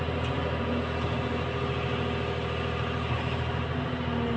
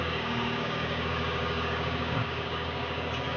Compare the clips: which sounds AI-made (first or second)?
second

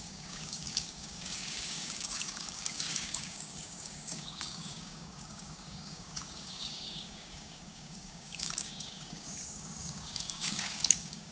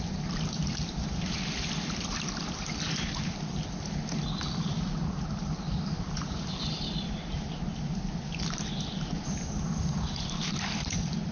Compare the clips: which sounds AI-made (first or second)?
first